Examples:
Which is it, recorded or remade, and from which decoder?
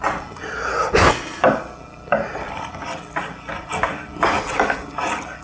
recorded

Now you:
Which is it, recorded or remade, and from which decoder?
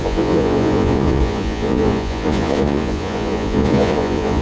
remade, vocoder, Vocos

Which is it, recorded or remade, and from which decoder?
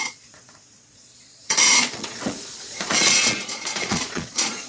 remade, vocoder, Vocos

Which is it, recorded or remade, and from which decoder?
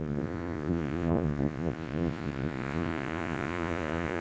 remade, vocoder, Vocos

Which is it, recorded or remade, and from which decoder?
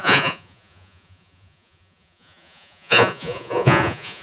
remade, vocoder, Vocos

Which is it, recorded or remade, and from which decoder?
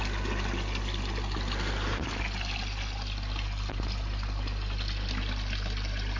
recorded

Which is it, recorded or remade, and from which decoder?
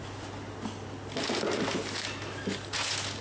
recorded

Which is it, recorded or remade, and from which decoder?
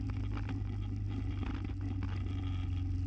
recorded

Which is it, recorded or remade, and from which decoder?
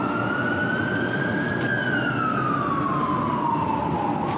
recorded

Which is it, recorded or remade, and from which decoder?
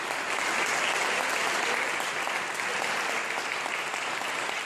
recorded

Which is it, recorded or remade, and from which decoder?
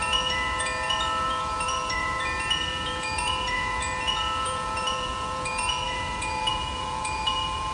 remade, vocoder, Vocos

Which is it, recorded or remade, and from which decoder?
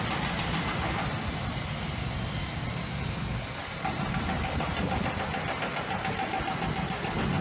recorded